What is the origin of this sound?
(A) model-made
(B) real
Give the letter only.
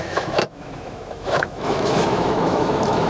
A